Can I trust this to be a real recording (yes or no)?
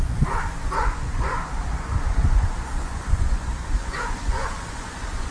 no